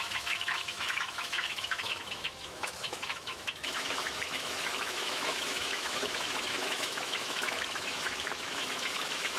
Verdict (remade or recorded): remade